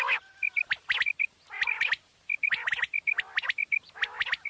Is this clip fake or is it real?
real